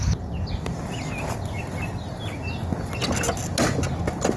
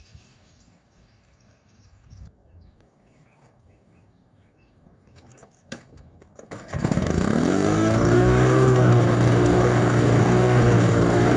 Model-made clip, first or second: second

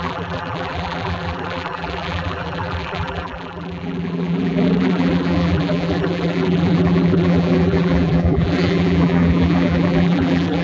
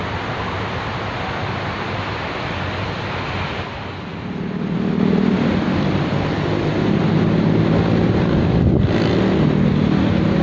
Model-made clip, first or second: first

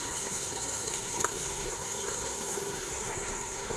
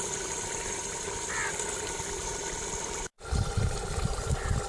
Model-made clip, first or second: first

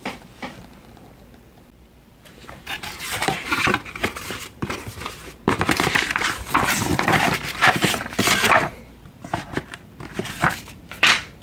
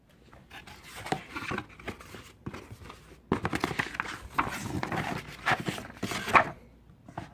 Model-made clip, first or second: first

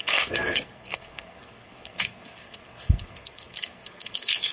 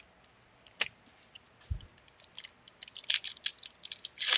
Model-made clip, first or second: first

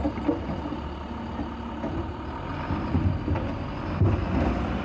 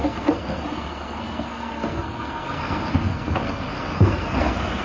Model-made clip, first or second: second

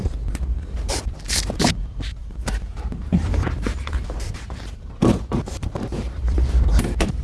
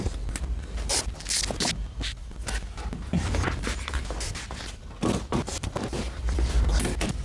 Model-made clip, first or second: first